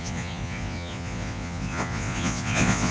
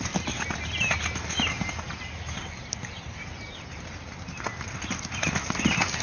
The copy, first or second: first